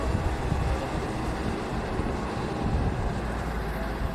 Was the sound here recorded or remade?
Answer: recorded